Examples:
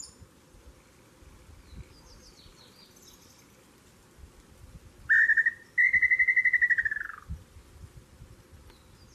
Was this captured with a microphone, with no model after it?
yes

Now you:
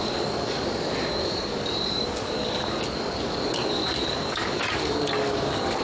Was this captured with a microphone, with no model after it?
no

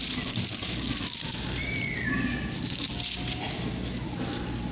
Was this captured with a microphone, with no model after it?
yes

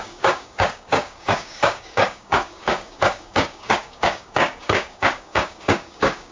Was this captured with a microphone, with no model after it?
no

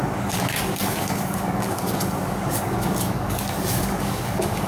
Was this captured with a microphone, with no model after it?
no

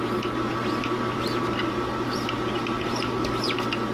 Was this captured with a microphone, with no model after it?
yes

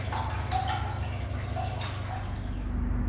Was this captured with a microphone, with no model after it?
yes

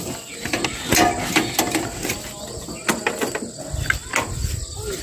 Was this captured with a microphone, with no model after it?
yes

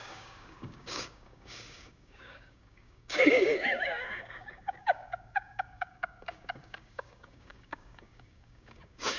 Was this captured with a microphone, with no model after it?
no